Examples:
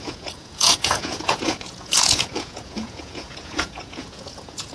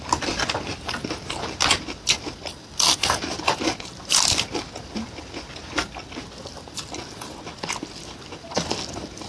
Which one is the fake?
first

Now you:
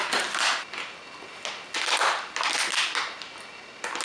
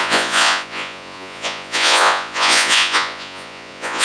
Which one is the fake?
second